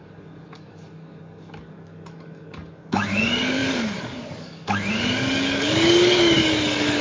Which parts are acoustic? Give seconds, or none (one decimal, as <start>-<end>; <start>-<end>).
none